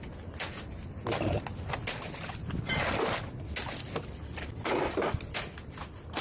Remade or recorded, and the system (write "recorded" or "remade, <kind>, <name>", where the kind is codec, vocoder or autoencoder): recorded